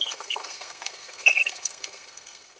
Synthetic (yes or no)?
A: yes